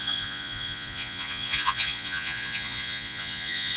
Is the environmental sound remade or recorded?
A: remade